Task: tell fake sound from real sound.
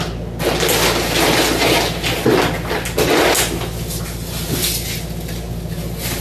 real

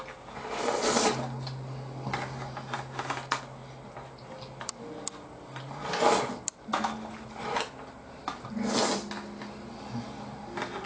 real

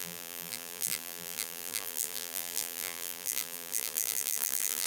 fake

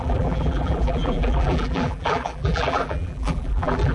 fake